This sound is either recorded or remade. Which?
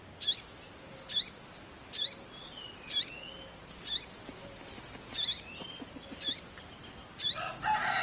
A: recorded